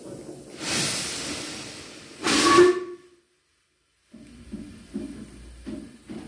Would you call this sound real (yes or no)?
yes